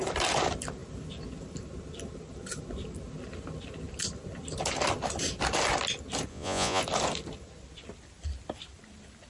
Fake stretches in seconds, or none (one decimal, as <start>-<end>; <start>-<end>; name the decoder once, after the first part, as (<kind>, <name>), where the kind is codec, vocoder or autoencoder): 6.3-6.8 (vocoder, Vocos)

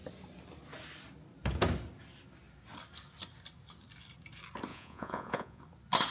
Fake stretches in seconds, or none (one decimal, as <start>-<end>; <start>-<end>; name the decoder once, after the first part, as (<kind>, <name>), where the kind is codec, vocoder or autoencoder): 4.7-5.6 (vocoder, Vocos)

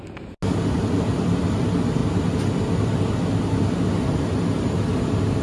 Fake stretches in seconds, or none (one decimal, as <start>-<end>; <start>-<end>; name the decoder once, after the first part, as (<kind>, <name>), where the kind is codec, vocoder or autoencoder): none

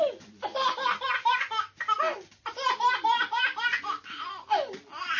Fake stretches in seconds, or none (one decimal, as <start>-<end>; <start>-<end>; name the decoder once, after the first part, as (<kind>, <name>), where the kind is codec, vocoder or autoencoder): none

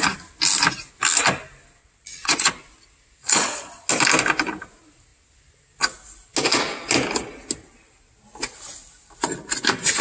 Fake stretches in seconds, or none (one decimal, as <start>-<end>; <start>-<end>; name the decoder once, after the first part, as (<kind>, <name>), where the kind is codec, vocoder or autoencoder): 1.8-2.5 (vocoder, Vocos); 3.2-3.9

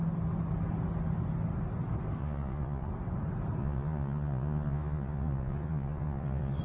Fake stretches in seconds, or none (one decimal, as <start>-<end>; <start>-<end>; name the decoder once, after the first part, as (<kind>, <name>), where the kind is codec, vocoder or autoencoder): 2.2-2.9 (vocoder, Vocos); 3.6-6.6